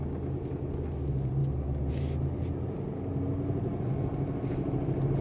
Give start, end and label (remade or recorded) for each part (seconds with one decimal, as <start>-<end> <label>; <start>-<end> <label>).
0.0-5.2 recorded